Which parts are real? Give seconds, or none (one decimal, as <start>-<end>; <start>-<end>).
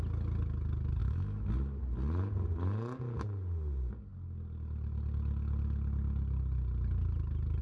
0.0-1.0; 1.5-7.6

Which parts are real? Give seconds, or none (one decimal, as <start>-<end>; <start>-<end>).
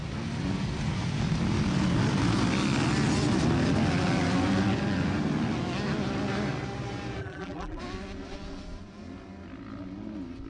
0.0-7.2; 7.8-10.5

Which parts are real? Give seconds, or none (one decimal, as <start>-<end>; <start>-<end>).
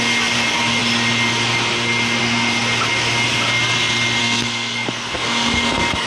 0.0-4.2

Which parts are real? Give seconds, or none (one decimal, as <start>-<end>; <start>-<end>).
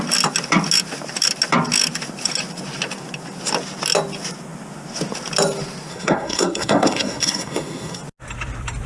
0.0-5.9; 8.0-8.9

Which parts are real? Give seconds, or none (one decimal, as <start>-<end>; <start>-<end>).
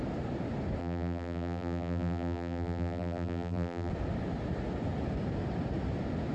0.0-0.8; 3.9-6.3